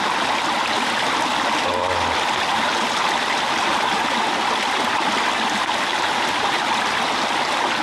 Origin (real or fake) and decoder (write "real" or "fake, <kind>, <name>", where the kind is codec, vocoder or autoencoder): real